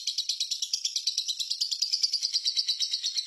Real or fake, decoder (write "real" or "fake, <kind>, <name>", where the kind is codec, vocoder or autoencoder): real